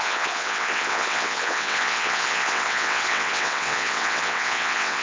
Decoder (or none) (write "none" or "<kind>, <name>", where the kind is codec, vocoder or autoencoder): vocoder, WaveNeXt